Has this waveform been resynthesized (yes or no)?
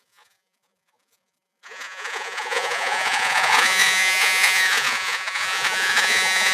yes